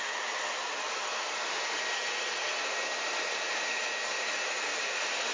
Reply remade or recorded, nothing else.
recorded